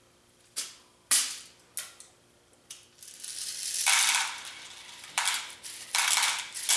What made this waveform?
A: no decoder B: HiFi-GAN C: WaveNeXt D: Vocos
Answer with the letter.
A